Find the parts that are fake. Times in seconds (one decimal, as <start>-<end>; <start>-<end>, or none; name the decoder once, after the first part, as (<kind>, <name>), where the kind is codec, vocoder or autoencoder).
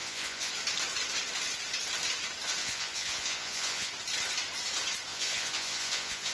0.0-0.5 (vocoder, Vocos); 2.6-3.9; 5.1-6.3